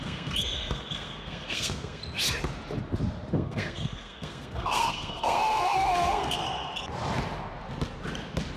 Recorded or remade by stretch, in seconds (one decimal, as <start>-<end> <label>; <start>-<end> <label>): 0.0-2.0 remade; 2.0-3.3 recorded; 3.3-6.4 remade; 6.4-8.6 recorded